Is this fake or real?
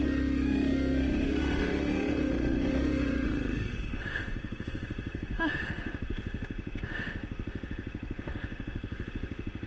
fake